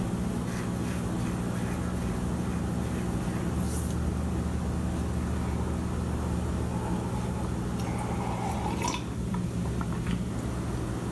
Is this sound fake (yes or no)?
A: no